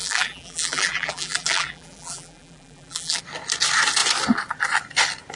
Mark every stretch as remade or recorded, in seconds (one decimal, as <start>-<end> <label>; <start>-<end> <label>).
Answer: 0.0-3.2 remade; 3.2-5.3 recorded